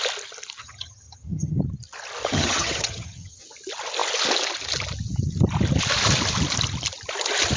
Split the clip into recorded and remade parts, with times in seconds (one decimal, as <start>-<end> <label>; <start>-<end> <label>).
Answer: 0.0-0.6 recorded; 0.6-1.6 remade; 1.6-2.2 recorded; 2.2-3.4 remade; 3.4-7.6 recorded